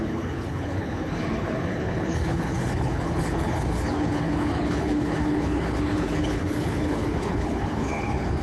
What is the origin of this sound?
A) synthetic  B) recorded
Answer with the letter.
A